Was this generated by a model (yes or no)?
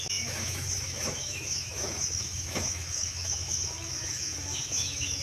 yes